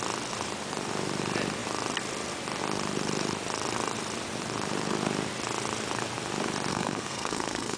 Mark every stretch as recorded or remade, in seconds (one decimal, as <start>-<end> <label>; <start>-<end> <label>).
0.0-6.7 recorded; 6.7-7.8 remade